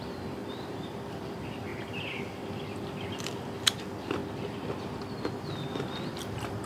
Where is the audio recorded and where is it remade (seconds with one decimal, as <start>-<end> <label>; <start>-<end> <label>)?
0.0-4.2 remade; 4.2-5.3 recorded; 5.3-6.7 remade